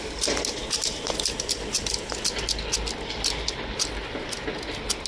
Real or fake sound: real